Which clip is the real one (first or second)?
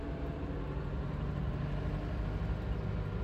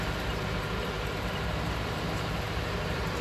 first